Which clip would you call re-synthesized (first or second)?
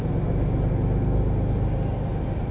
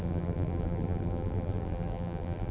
second